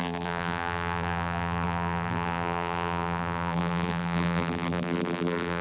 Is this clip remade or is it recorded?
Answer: remade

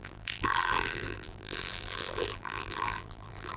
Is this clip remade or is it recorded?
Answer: remade